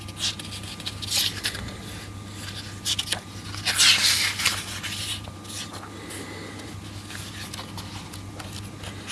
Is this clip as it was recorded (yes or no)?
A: yes